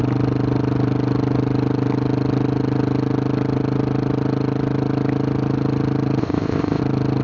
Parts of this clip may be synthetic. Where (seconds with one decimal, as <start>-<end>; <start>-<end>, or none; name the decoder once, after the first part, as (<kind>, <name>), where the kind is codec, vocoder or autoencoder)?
6.2-6.8 (codec, ZipCodec)